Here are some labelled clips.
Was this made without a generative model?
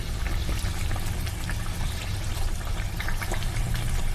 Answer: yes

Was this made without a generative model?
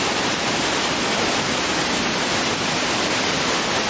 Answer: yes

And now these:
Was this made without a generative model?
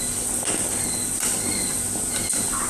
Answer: yes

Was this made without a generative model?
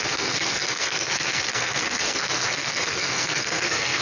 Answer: no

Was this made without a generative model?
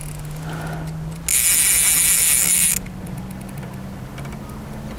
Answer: yes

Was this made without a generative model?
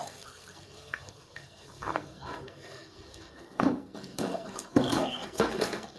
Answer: no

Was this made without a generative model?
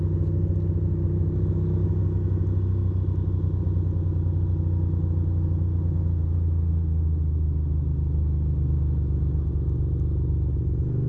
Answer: yes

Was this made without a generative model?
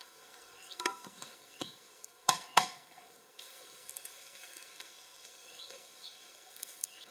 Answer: no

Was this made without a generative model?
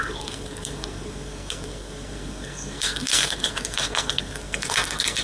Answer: no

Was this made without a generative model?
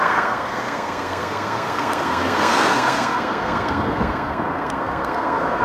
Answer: no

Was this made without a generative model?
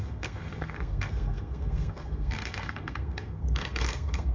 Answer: no